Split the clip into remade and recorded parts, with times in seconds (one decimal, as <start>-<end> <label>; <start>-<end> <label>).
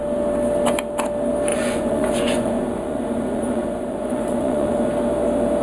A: 0.0-1.5 recorded; 1.5-4.9 remade; 4.9-5.6 recorded